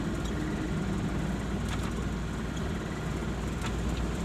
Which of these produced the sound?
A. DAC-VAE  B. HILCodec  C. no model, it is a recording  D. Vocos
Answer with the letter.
C